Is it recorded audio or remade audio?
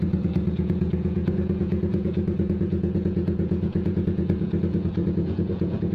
remade